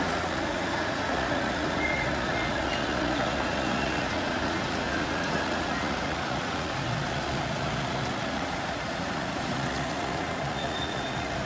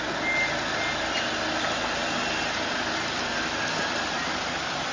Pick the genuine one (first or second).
second